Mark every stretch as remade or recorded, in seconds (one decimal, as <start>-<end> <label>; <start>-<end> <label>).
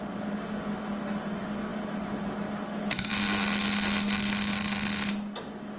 0.0-4.5 recorded; 4.5-5.1 remade; 5.1-5.8 recorded